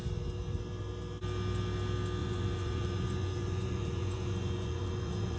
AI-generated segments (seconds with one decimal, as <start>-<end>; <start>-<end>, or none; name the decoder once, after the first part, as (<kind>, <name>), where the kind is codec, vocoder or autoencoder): 2.2-5.4 (vocoder, Vocos)